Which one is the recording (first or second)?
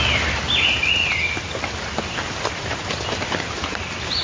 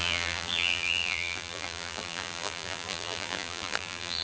first